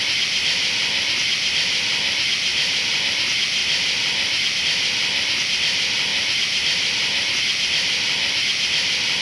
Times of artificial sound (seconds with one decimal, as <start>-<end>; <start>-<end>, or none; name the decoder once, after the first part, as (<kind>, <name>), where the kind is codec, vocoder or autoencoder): 2.5-3.0 (vocoder, BigVGAN v2); 6.1-7.3

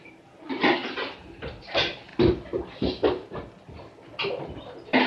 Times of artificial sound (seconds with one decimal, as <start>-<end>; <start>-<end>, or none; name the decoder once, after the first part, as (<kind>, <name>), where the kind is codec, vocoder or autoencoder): 0.0-0.8 (vocoder, BigVGAN v2); 1.6-2.1; 4.6-5.1

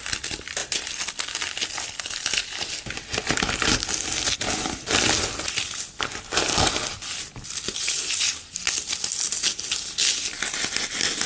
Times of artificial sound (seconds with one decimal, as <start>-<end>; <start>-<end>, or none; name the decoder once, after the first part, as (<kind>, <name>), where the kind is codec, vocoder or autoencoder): 0.6-1.1 (vocoder, BigVGAN v2)

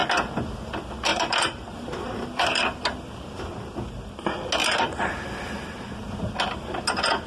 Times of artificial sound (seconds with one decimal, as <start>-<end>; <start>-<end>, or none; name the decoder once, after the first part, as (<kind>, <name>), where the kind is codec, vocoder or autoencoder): 1.1-2.6 (vocoder, BigVGAN v2); 4.6-6.3

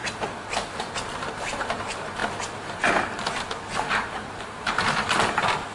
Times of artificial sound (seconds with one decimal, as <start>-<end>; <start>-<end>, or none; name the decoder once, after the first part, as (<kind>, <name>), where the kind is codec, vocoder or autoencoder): 0.9-2.2 (vocoder, BigVGAN v2); 3.9-5.7